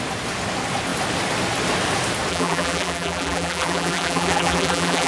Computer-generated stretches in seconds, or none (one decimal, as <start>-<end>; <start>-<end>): 2.3-5.1

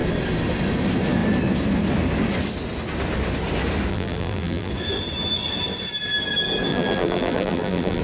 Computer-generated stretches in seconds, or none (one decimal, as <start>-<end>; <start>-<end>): 3.9-4.7; 6.7-8.0

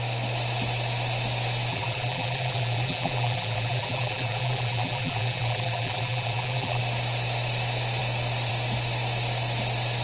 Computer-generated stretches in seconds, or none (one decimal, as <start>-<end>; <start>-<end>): 1.7-6.8

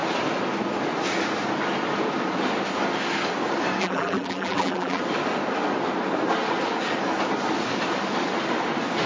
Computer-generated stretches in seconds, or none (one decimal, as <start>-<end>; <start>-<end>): 3.8-5.0

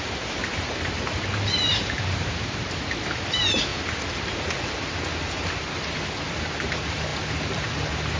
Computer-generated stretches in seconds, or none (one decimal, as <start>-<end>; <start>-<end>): 0.0-3.7; 4.3-8.2

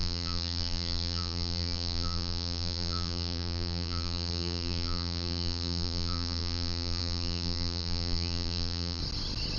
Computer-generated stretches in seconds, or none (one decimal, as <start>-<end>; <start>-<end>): 0.0-9.0

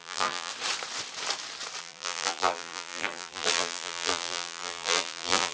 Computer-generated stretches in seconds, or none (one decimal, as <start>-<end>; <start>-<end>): 0.0-0.5; 1.8-5.5